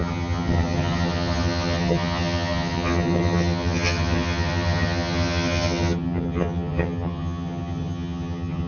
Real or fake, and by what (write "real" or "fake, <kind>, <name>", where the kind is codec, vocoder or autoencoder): fake, vocoder, HiFi-GAN